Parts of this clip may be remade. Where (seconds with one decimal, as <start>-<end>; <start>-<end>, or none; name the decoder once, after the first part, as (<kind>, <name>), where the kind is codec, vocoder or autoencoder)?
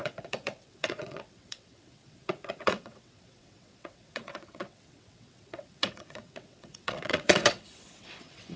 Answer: 0.0-8.6 (vocoder, WaveNeXt)